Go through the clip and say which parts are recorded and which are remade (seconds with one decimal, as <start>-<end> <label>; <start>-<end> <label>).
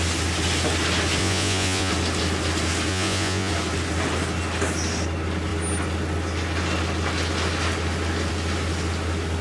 0.0-1.2 recorded; 1.2-1.9 remade; 1.9-2.9 recorded; 2.9-3.5 remade; 3.5-9.4 recorded